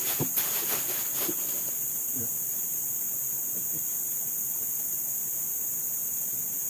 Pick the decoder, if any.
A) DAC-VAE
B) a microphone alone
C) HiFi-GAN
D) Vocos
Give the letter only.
B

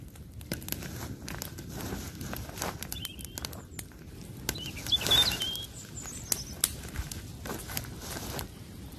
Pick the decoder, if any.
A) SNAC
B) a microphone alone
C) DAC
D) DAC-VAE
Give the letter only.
B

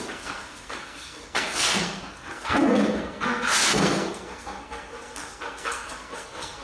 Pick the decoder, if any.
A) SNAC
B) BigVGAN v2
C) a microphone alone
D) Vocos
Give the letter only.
A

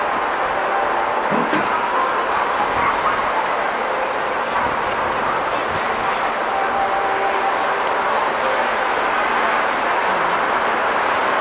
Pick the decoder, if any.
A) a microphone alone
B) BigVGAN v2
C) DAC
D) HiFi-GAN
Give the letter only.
A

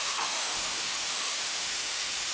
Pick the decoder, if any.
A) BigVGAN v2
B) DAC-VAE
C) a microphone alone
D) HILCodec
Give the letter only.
B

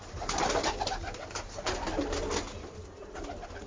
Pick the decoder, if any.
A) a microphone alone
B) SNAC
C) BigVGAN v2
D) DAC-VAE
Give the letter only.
A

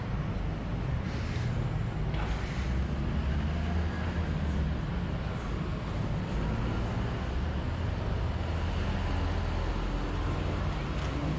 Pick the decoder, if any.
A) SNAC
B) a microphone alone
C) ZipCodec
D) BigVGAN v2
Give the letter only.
B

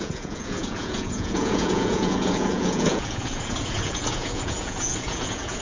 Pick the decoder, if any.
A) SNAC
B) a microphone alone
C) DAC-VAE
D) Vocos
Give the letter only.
D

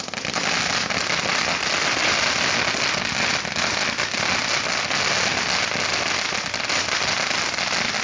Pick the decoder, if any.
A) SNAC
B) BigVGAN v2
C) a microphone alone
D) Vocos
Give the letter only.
C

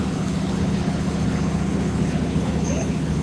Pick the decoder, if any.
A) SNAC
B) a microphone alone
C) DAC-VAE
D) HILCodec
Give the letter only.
D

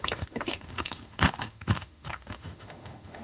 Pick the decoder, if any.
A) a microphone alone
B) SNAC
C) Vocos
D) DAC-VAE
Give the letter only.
D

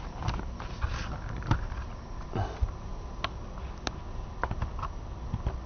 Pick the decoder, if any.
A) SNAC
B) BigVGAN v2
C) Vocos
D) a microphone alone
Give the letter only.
D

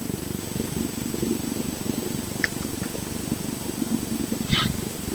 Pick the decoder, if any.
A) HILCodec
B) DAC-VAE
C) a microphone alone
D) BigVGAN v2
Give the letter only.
C